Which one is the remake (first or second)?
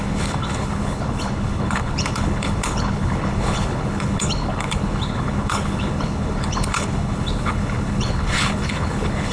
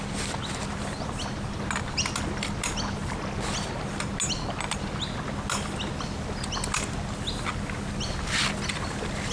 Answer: first